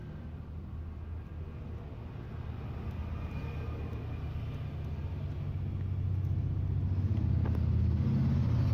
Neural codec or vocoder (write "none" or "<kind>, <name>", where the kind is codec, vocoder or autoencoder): none